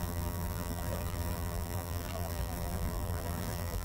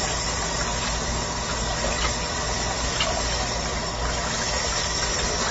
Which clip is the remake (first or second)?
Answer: first